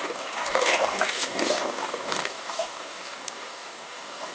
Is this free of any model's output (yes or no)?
no